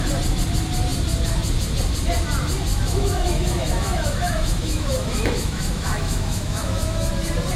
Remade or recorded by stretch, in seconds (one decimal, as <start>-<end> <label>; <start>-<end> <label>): 0.0-2.7 recorded; 2.7-7.1 remade; 7.1-7.6 recorded